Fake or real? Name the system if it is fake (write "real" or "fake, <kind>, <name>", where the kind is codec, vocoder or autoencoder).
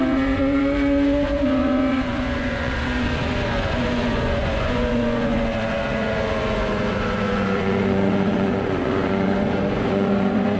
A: fake, vocoder, Vocos